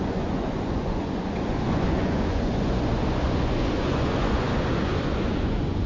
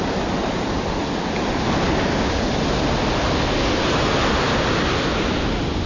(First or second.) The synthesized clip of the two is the first